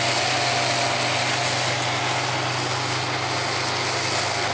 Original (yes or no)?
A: yes